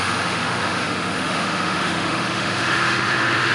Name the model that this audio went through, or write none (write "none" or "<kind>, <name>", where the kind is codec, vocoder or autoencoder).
autoencoder, DAC-VAE